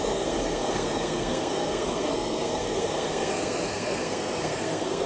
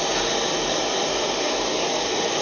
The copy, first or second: first